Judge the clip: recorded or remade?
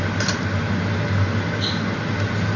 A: recorded